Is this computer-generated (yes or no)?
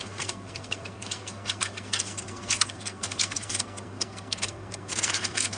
yes